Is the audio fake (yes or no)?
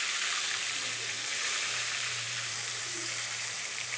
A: yes